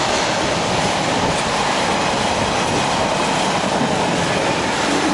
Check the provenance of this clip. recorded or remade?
recorded